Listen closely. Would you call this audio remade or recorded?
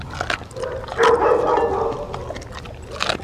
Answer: recorded